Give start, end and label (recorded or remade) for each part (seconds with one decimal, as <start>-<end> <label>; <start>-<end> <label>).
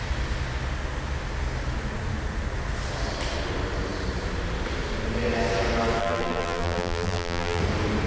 0.0-6.0 recorded; 6.0-7.6 remade; 7.6-8.1 recorded